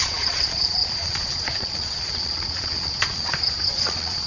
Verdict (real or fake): fake